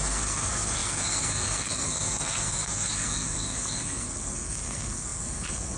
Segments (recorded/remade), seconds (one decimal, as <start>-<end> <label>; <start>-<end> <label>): 0.0-5.8 remade